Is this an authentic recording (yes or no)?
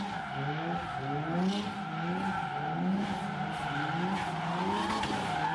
yes